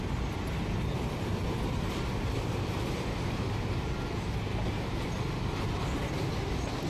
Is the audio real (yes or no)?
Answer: yes